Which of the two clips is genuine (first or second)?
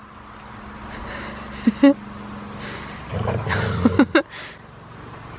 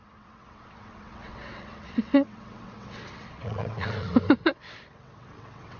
first